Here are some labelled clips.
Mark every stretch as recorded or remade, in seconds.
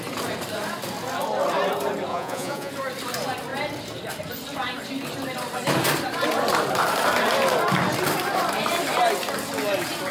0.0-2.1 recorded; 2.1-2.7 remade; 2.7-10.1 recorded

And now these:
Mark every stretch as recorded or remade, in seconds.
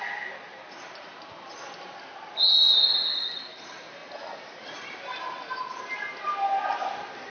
0.0-7.3 recorded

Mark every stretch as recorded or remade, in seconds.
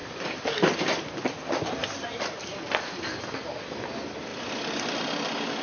0.0-1.1 remade; 1.1-1.8 recorded; 1.8-3.9 remade; 3.9-5.6 recorded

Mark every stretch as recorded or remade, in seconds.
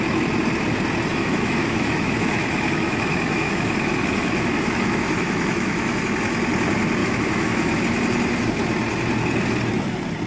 0.0-1.1 recorded; 1.1-6.0 remade; 6.0-7.0 recorded; 7.0-7.8 remade; 7.8-10.3 recorded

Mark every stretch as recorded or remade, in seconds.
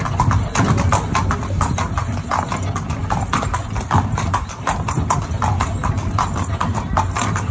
0.0-7.5 recorded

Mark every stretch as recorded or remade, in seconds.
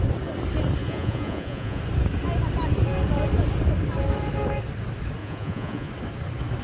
0.0-0.8 recorded; 0.8-1.8 remade; 1.8-5.2 recorded; 5.2-5.9 remade; 5.9-6.6 recorded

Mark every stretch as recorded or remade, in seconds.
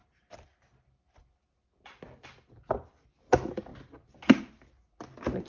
0.0-5.5 recorded